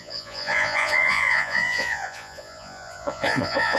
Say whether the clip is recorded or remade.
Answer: remade